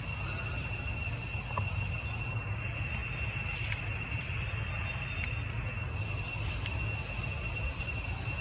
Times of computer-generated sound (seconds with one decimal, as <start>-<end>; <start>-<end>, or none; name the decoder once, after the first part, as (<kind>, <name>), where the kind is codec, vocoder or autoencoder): none